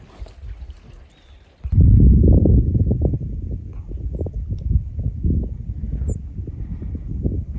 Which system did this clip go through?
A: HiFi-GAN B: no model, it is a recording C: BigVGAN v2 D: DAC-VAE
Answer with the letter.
B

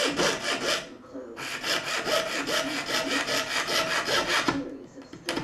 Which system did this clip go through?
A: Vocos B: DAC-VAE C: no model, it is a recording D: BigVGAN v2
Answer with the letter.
C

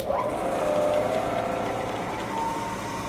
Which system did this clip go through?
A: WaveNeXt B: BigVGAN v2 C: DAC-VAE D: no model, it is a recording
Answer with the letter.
D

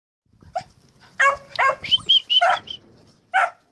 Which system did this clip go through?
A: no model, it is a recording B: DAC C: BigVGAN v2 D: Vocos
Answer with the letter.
A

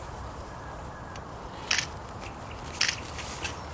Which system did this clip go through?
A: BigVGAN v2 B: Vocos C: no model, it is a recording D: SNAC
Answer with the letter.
C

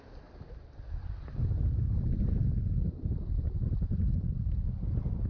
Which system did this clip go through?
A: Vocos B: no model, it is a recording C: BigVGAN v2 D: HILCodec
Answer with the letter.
B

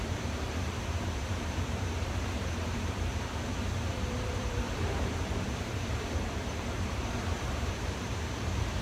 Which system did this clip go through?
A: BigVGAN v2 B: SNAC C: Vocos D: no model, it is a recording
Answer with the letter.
A